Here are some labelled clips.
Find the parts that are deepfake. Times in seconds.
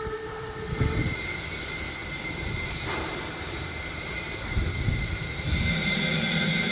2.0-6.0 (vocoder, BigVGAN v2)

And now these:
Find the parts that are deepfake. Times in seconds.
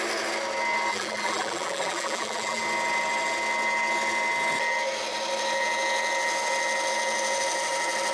0.9-2.6 (vocoder, BigVGAN v2)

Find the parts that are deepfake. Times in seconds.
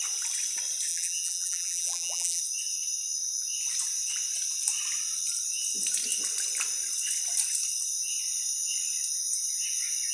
0.9-2.4 (vocoder, BigVGAN v2)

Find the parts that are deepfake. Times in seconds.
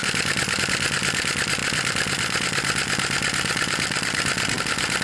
1.6-4.6 (vocoder, BigVGAN v2)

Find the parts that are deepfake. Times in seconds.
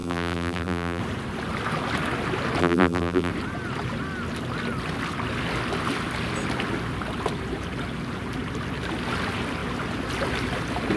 0.0-1.0 (vocoder, BigVGAN v2); 2.6-3.3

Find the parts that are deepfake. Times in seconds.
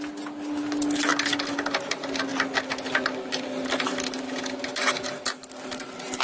0.0-1.1 (vocoder, BigVGAN v2); 1.9-6.2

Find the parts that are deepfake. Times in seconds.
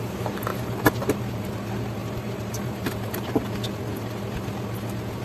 0.5-1.4 (vocoder, BigVGAN v2); 2.0-3.1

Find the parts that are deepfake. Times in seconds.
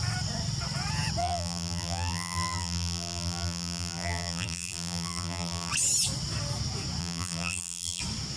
1.2-5.7 (vocoder, BigVGAN v2); 7.0-8.0